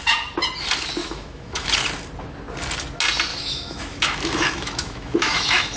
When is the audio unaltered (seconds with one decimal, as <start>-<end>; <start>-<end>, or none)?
0.0-1.0; 1.7-3.3